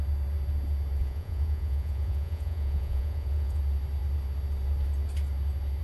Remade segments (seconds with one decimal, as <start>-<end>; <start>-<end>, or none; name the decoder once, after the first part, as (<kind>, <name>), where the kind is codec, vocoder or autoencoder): 1.0-3.6 (vocoder, Vocos)